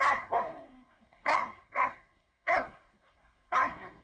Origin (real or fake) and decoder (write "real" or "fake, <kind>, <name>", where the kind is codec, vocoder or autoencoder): fake, codec, SNAC